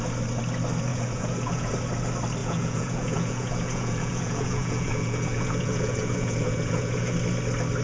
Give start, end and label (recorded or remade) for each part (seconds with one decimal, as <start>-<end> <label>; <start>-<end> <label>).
0.0-0.9 recorded; 0.9-1.7 remade; 1.7-2.4 recorded; 2.4-7.1 remade; 7.1-7.8 recorded